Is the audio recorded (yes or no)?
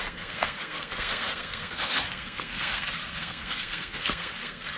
no